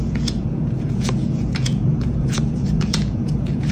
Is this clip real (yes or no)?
no